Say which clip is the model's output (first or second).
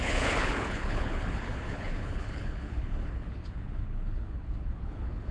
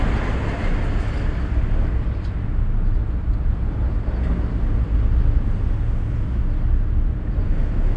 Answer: first